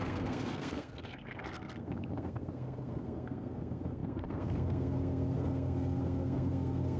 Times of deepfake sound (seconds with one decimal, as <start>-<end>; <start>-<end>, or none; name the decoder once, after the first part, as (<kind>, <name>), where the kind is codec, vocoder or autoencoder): 0.0-7.0 (codec, SNAC)